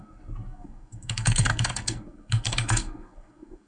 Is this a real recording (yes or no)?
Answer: no